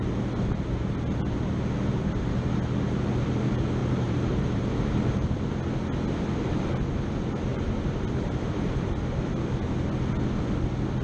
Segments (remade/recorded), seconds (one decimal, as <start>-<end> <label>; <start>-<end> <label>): 0.0-3.8 recorded; 3.8-5.5 remade; 5.5-7.5 recorded; 7.5-8.9 remade; 8.9-11.0 recorded